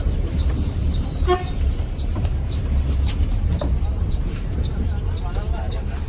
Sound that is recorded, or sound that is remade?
remade